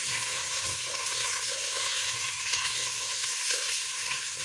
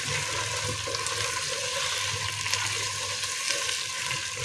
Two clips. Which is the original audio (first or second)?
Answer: second